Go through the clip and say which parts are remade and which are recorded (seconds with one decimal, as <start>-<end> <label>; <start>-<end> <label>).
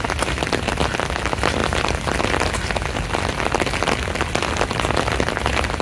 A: 0.0-5.8 recorded